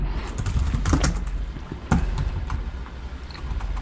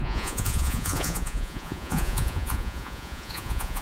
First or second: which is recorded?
first